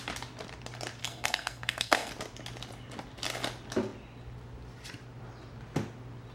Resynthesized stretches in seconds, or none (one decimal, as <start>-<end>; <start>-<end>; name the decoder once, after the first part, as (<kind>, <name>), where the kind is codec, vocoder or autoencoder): 1.0-2.1 (codec, SNAC)